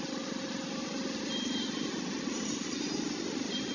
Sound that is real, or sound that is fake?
real